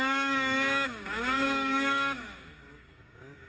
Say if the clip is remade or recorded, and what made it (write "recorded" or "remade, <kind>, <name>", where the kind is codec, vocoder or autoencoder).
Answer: remade, codec, DAC